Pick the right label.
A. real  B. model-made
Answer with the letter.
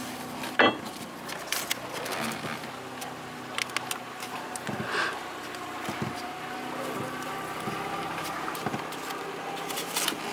A